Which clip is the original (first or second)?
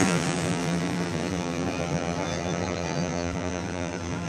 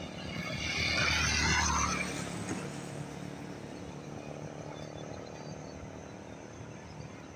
second